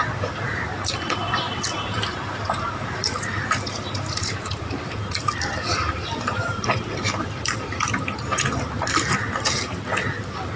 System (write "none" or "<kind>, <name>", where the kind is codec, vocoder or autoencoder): vocoder, BigVGAN v2